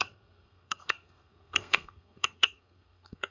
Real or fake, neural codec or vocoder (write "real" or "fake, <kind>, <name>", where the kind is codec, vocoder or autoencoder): fake, codec, SNAC